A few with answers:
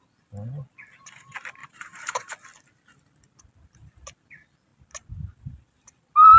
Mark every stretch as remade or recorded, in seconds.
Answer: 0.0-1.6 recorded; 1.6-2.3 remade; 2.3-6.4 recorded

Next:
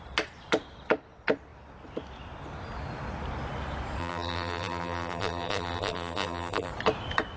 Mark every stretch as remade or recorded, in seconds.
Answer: 0.0-4.0 recorded; 4.0-6.7 remade; 6.7-7.4 recorded

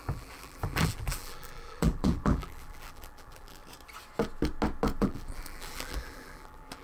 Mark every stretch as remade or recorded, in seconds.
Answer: 0.0-3.6 remade; 3.6-5.0 recorded; 5.0-6.8 remade

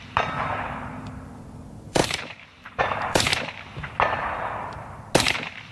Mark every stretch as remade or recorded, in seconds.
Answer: 0.0-3.3 remade; 3.3-5.7 recorded